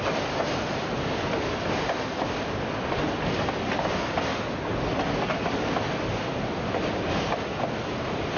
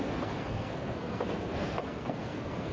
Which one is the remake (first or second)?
second